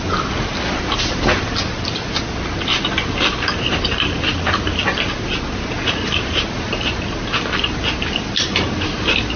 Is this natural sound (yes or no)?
yes